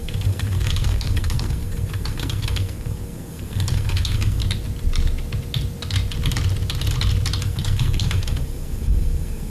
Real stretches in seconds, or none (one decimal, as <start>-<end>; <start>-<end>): 4.4-7.4